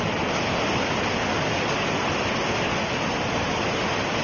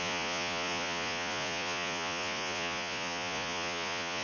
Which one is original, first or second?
first